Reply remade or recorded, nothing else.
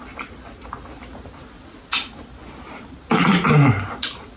recorded